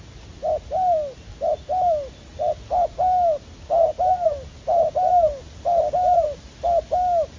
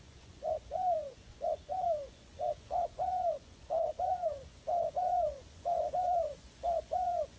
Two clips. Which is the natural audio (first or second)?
first